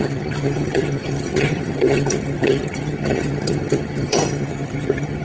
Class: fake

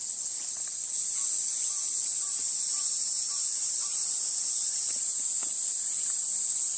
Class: real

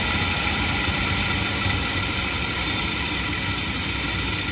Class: real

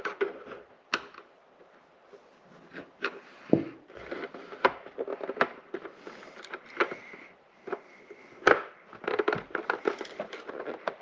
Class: fake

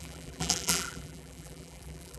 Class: fake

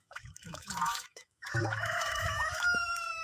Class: fake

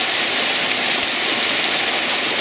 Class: real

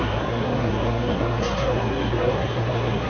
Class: fake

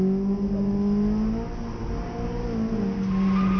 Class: real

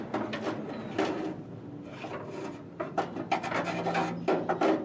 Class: real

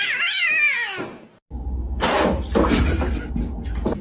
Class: real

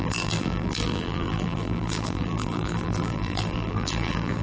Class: fake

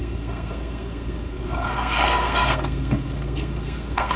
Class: fake